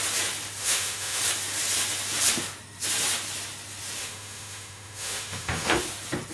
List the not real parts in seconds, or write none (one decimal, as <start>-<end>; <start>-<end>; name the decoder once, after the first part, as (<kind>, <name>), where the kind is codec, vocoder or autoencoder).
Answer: 0.6-1.2 (autoencoder, DAC-VAE); 4.0-5.8